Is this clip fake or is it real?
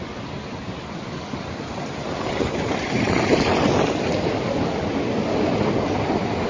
real